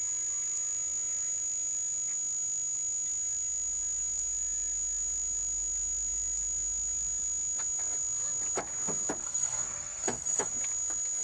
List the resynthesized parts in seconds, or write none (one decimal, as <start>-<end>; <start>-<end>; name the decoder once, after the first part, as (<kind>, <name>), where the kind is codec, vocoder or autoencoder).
9.2-10.5 (codec, SNAC)